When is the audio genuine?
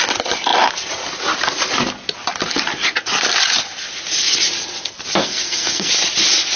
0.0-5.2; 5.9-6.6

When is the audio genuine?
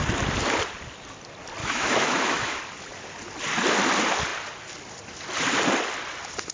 0.0-1.6; 2.6-6.5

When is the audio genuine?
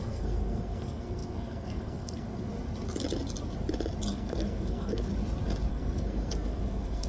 2.5-4.1; 5.1-5.7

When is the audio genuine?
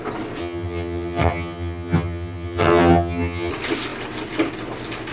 0.0-0.4; 3.5-5.1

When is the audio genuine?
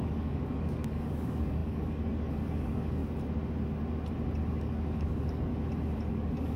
3.0-4.5; 5.5-6.1